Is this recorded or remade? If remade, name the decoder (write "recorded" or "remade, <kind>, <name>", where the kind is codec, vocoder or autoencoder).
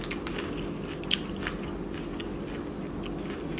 recorded